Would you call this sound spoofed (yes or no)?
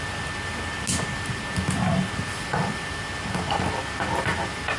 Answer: no